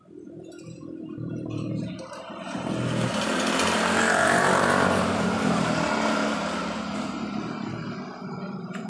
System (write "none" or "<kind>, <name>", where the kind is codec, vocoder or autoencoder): vocoder, BigVGAN v2